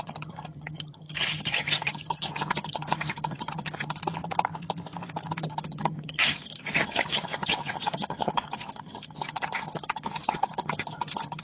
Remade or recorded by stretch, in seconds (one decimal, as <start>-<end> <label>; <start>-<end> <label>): 0.0-4.0 remade; 4.0-5.4 recorded; 5.4-11.4 remade